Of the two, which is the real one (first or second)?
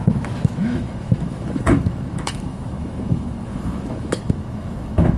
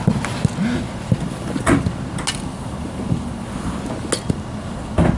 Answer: second